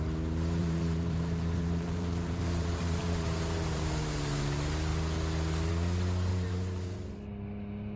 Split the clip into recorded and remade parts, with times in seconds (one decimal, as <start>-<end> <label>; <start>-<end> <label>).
0.0-0.6 recorded; 0.6-4.0 remade; 4.0-6.3 recorded; 6.3-7.1 remade; 7.1-8.0 recorded